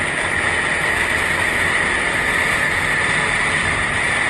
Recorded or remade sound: recorded